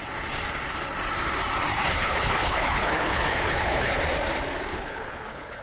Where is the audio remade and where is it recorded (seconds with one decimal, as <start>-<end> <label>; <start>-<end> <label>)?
0.0-1.7 recorded; 1.7-4.0 remade; 4.0-4.7 recorded; 4.7-5.6 remade